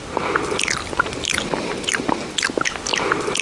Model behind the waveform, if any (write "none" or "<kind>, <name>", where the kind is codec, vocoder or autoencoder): none